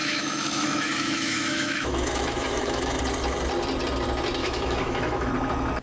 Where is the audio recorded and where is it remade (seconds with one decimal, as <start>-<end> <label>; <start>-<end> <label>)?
0.0-3.0 remade; 3.0-4.4 recorded; 4.4-5.3 remade; 5.3-5.8 recorded